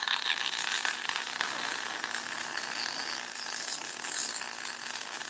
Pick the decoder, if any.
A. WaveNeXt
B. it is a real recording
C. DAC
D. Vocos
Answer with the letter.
B